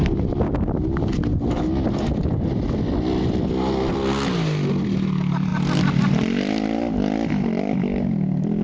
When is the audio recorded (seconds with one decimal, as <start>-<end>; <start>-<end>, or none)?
0.0-8.6